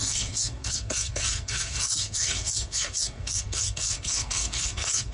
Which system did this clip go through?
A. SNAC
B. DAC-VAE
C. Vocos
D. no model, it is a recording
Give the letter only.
A